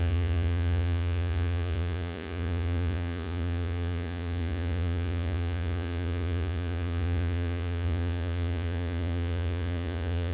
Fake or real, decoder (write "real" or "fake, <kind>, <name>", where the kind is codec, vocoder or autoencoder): fake, vocoder, Vocos